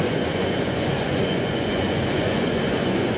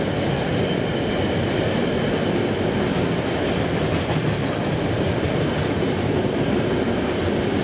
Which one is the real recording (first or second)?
second